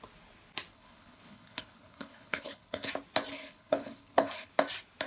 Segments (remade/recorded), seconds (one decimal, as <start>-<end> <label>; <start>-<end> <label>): 0.0-0.7 recorded; 0.7-2.9 remade; 2.9-3.3 recorded; 3.3-4.5 remade; 4.5-5.1 recorded